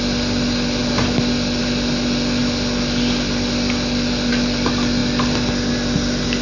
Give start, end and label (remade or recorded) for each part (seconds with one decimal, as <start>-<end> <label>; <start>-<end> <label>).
0.0-6.4 recorded